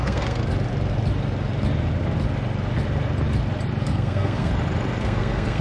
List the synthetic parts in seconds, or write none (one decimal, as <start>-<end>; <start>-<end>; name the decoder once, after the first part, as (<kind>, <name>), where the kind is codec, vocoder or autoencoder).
0.0-0.4 (codec, SNAC); 3.8-4.5; 5.0-5.6